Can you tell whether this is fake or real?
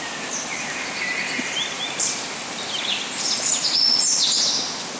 real